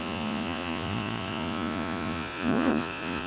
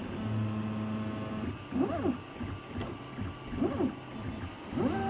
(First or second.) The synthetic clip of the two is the first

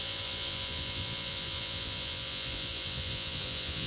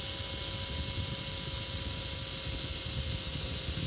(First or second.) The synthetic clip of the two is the first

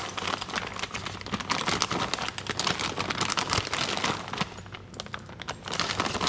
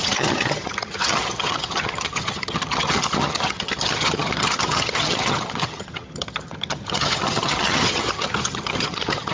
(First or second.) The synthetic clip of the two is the second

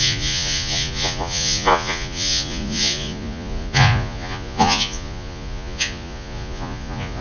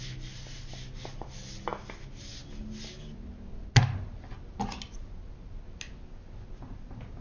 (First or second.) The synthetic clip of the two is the first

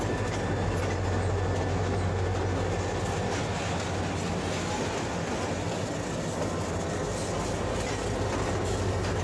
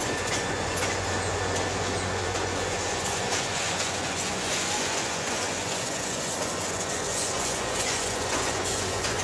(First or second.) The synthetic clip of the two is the second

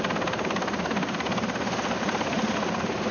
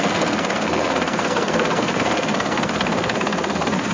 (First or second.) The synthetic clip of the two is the second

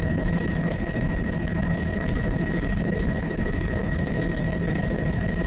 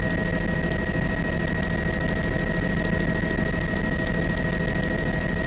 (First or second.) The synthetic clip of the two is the first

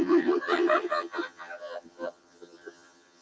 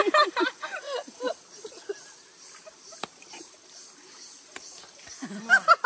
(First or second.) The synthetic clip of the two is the first